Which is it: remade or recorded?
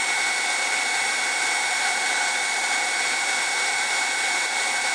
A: recorded